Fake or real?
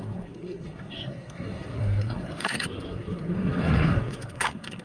fake